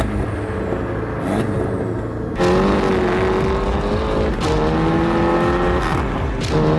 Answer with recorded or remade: recorded